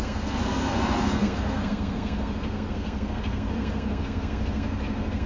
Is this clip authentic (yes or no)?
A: no